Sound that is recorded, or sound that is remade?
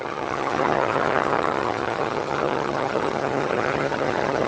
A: remade